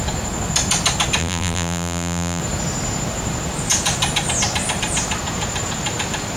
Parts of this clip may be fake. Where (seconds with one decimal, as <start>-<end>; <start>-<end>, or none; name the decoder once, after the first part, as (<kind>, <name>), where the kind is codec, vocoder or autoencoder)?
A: 1.2-2.4 (vocoder, BigVGAN v2)